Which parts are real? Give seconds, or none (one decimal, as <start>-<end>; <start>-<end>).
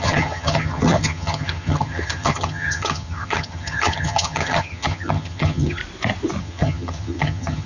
5.8-6.4